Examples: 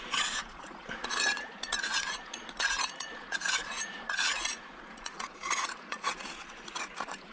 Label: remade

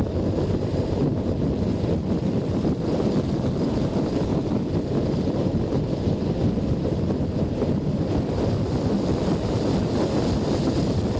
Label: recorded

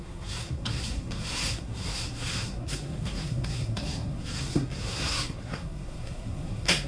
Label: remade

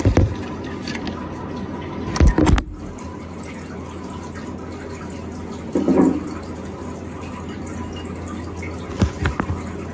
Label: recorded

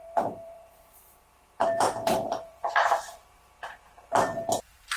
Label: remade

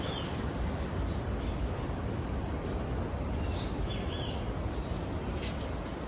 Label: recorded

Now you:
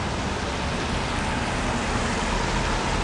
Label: recorded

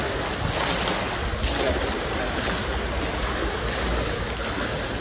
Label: recorded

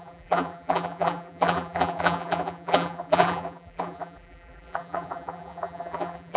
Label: remade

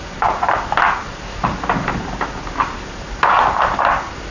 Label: recorded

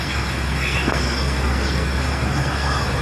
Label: remade